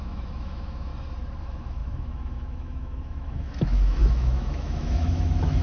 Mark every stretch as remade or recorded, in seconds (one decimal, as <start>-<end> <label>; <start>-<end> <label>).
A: 0.0-0.9 remade; 0.9-1.4 recorded; 1.4-5.6 remade